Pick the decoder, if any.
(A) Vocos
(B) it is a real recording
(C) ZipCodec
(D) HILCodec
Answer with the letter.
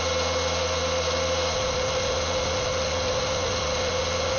B